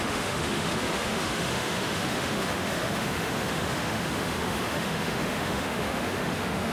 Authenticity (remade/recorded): remade